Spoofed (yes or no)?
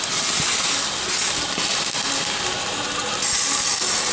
no